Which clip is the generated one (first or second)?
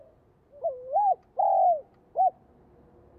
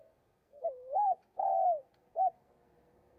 second